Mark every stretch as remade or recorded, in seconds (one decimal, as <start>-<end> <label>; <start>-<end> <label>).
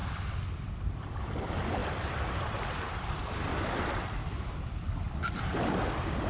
0.0-6.3 recorded